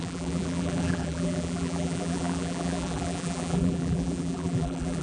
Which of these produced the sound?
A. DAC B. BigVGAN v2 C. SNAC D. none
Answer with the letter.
B